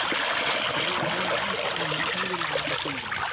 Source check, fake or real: real